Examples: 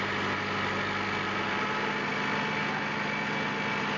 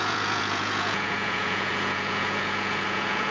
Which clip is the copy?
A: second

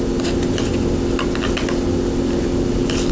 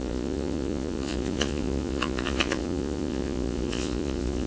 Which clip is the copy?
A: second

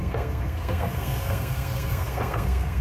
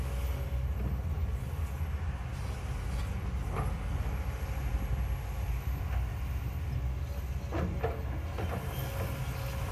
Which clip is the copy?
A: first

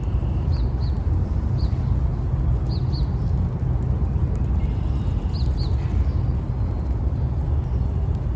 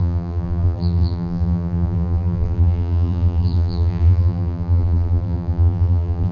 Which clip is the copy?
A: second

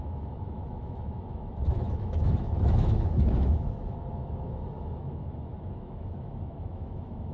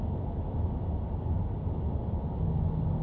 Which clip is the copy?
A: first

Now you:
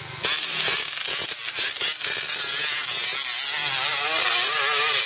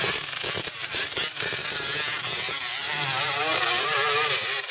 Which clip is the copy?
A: second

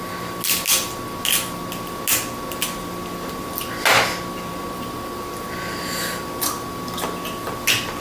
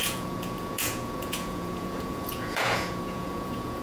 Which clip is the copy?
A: second